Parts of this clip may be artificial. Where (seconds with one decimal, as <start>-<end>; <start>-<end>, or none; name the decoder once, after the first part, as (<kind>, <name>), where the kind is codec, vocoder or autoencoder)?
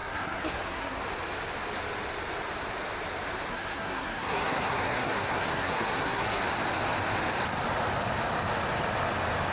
0.0-1.0 (codec, SNAC); 3.5-6.4